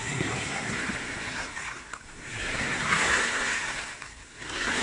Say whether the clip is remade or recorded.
remade